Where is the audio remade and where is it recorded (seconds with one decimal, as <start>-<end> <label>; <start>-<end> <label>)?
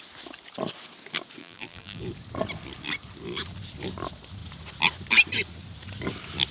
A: 0.0-1.4 recorded; 1.4-2.0 remade; 2.0-6.5 recorded